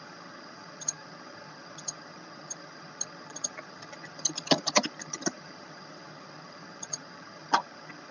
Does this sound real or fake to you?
fake